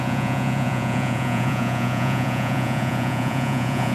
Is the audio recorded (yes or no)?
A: no